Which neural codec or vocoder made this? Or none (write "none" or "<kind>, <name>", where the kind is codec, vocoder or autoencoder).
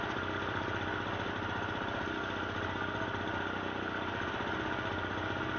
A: none